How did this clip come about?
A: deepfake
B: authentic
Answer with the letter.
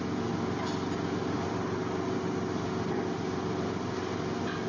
B